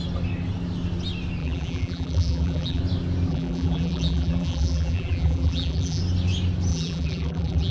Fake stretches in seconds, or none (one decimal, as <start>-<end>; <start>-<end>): 1.4-2.8; 3.3-6.0; 6.7-7.7